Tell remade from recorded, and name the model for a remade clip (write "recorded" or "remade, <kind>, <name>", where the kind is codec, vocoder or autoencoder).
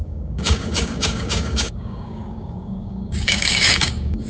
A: remade, codec, DAC